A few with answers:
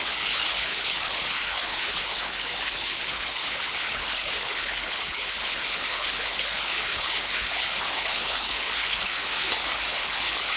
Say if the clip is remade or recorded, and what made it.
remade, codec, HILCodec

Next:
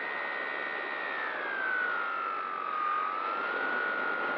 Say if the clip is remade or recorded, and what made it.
recorded